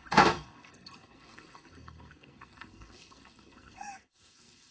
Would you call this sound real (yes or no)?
no